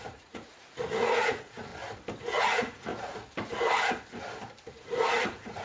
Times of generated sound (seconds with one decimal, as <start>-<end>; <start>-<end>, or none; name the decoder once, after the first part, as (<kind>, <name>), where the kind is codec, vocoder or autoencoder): 0.0-1.7 (vocoder, Vocos); 2.2-2.9; 4.7-5.6

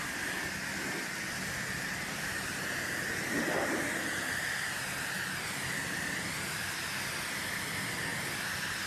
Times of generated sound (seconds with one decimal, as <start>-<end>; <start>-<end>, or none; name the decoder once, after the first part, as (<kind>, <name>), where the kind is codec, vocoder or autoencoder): none

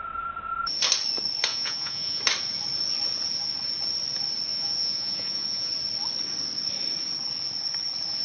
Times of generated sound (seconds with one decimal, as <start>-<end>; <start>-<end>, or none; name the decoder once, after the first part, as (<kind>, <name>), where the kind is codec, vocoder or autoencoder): 1.5-2.2 (vocoder, Vocos); 4.5-5.7